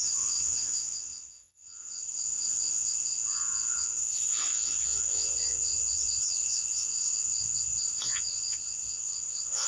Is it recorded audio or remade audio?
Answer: remade